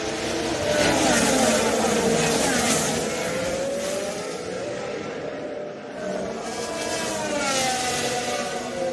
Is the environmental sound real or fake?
real